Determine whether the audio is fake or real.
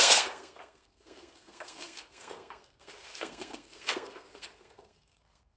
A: fake